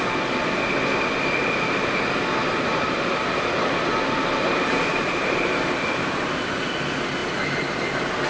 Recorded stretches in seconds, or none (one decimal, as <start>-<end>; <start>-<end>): 0.0-2.4; 6.1-8.3